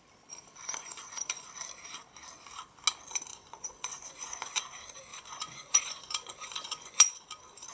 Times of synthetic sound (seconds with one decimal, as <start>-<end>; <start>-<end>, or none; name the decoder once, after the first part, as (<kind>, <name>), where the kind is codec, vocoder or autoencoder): 0.6-1.5 (vocoder, Vocos); 3.3-4.6; 5.1-7.2